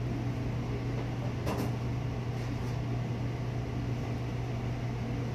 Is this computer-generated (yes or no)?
no